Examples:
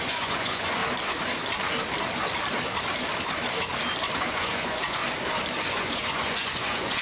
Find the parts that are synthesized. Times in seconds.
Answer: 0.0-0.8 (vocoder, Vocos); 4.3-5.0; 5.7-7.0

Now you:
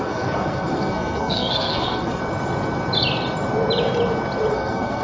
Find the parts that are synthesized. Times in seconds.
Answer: 0.0-2.2 (codec, SNAC); 4.5-5.0

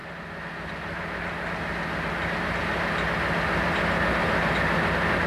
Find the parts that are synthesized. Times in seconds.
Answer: none

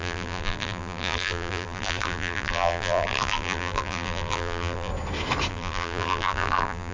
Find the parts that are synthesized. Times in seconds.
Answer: 0.0-4.9 (vocoder, BigVGAN v2); 5.5-6.9

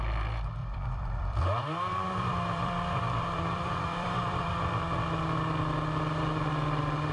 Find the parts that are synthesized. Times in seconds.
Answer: 0.6-1.4 (vocoder, BigVGAN v2); 1.9-4.7